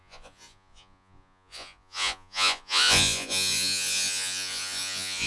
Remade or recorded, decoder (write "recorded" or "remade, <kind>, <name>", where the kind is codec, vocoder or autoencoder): remade, vocoder, Vocos